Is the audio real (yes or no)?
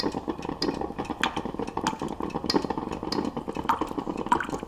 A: yes